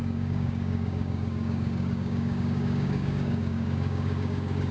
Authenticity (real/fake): fake